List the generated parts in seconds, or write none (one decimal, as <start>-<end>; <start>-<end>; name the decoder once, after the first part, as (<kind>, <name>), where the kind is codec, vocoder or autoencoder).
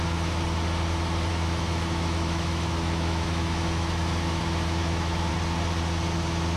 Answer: 1.3-5.3 (autoencoder, DAC-VAE)